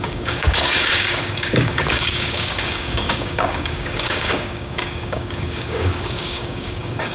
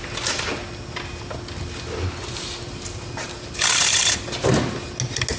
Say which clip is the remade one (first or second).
first